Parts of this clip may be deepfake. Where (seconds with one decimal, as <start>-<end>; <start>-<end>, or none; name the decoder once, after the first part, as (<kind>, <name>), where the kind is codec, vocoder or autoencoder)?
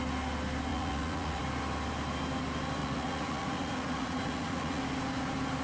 0.7-1.4 (vocoder, Vocos); 2.8-4.8